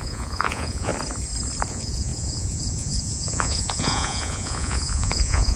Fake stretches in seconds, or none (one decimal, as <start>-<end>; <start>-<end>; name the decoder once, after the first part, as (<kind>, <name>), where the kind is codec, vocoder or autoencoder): 0.0-0.9 (vocoder, Vocos); 1.7-5.6